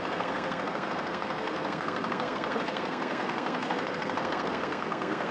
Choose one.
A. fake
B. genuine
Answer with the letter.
A